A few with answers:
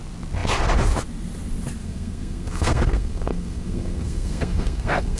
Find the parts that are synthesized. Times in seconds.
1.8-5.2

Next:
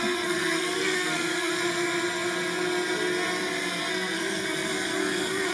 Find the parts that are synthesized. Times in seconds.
0.0-1.5; 3.9-5.5

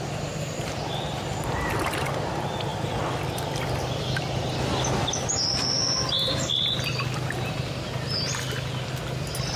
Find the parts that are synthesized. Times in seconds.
none

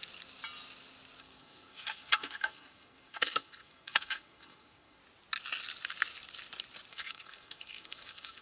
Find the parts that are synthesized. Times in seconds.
1.2-5.0; 6.9-8.4

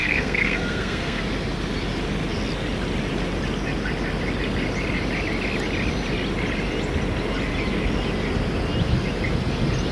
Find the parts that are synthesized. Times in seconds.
0.0-1.2

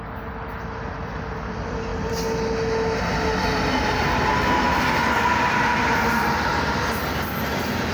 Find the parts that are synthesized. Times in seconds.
none

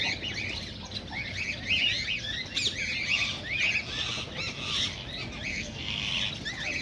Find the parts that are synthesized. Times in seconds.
5.5-6.1